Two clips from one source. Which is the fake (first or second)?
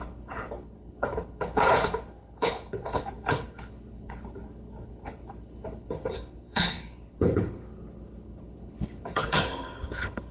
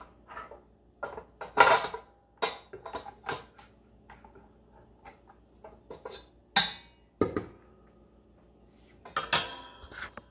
first